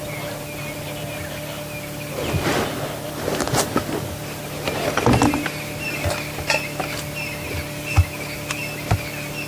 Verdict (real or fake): real